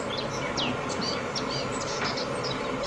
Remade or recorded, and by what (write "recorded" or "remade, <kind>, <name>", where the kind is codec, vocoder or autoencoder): remade, vocoder, BigVGAN v2